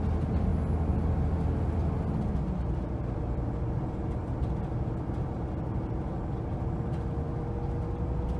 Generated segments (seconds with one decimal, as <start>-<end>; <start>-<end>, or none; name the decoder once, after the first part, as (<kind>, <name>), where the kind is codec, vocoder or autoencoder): none

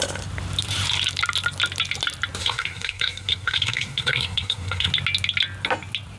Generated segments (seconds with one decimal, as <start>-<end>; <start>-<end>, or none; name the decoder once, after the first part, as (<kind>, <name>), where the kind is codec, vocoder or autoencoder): 2.4-4.9 (codec, SNAC)

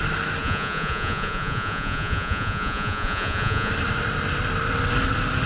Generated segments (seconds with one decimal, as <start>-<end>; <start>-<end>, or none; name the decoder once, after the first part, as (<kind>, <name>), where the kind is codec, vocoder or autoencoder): 0.4-3.7 (vocoder, Vocos)

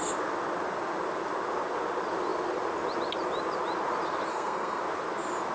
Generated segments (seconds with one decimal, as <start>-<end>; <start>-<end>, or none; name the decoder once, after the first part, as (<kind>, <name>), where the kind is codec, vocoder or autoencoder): 4.3-4.8 (codec, SNAC)

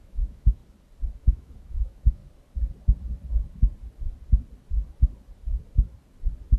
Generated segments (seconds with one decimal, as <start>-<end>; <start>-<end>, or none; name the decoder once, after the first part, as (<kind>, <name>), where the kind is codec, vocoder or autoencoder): 0.0-0.6 (autoencoder, DAC-VAE); 1.2-2.2